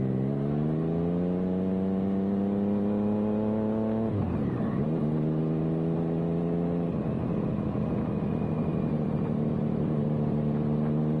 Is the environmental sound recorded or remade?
recorded